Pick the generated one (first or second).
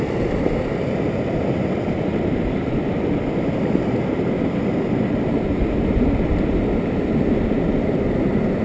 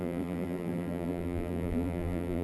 second